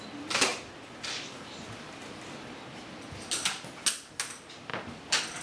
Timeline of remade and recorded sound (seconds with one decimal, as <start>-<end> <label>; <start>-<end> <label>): 0.0-5.4 recorded

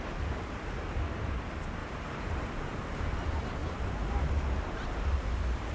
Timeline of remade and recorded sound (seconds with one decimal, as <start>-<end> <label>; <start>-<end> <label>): 0.0-3.6 recorded; 3.6-5.0 remade; 5.0-5.7 recorded

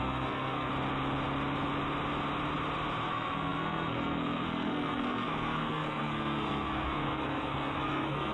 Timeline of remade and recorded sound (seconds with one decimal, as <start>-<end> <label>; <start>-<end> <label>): 0.0-0.7 remade; 0.7-3.1 recorded; 3.1-8.3 remade

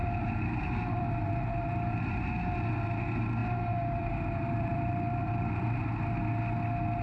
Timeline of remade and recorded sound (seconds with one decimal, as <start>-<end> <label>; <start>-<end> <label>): 0.0-2.0 remade; 2.0-3.4 recorded; 3.4-5.9 remade; 5.9-7.0 recorded

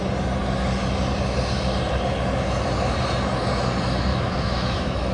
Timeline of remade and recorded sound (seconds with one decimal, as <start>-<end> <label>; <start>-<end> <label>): 0.0-4.1 recorded; 4.1-5.1 remade

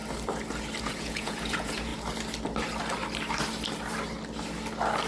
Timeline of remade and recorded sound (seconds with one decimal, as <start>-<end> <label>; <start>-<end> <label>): 0.0-0.8 recorded; 0.8-1.9 remade; 1.9-5.1 recorded

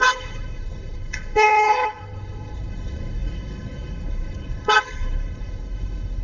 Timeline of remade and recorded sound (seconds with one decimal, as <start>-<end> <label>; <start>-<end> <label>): 0.0-6.2 remade